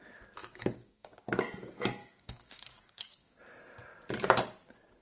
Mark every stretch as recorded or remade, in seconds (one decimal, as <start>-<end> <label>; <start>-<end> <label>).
0.0-0.4 recorded; 0.4-1.2 remade; 1.2-2.0 recorded; 2.0-3.4 remade; 3.4-5.0 recorded